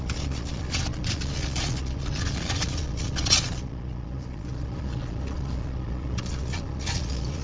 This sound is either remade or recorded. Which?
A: remade